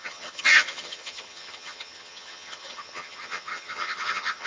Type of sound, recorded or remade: remade